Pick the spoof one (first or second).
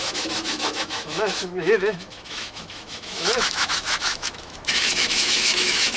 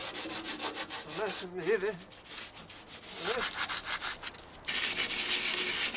first